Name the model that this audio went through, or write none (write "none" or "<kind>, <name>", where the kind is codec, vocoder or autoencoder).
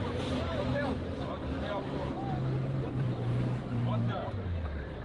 vocoder, BigVGAN v2